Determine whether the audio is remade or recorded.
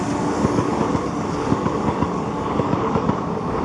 remade